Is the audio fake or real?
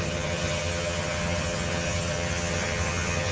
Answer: fake